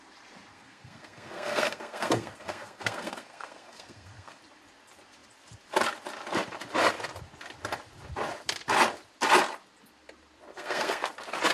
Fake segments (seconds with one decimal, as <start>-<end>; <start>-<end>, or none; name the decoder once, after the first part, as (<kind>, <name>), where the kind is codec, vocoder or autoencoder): 0.5-4.4 (codec, SNAC); 10.5-11.1